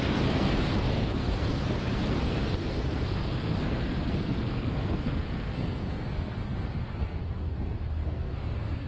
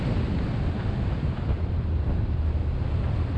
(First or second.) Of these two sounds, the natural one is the second